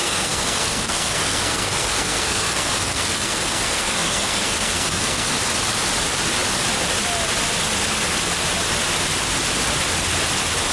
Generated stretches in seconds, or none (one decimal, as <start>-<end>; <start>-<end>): 0.0-5.3